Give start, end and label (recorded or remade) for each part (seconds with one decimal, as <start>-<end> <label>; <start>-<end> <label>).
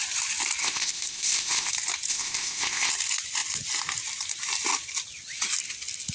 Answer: 0.0-0.6 recorded; 0.6-1.7 remade; 1.7-2.1 recorded; 2.1-2.9 remade; 2.9-6.1 recorded